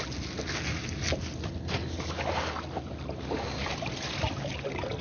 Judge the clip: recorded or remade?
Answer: recorded